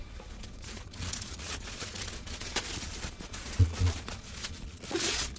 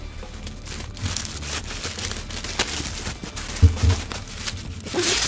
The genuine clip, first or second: second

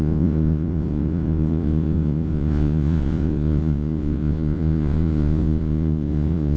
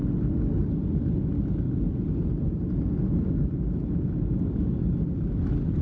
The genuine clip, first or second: second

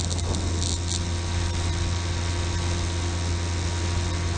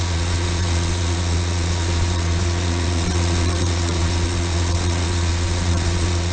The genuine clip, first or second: first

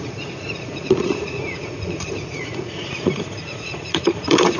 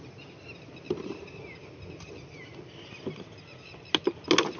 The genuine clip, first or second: second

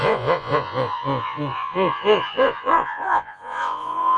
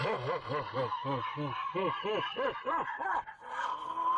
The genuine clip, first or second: second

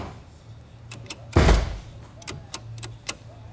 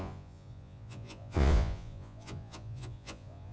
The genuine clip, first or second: first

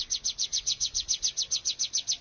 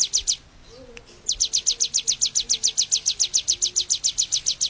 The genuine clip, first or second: second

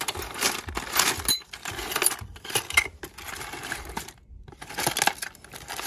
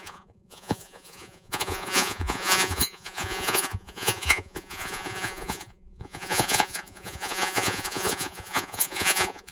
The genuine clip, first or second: first